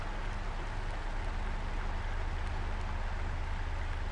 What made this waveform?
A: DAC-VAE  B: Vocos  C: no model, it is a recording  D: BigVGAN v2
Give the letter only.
C